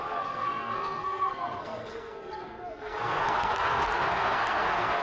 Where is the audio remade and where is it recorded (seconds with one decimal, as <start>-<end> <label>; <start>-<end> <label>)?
0.0-5.0 remade